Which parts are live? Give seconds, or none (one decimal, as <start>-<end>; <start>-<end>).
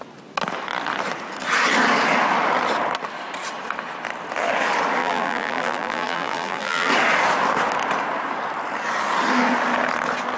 0.0-5.0; 6.9-10.4